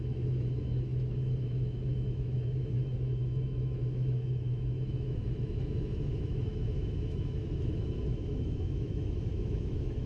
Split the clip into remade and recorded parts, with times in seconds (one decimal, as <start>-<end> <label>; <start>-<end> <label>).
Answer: 0.0-10.1 remade